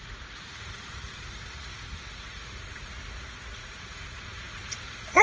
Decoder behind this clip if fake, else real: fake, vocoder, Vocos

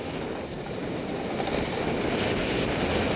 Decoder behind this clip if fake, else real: real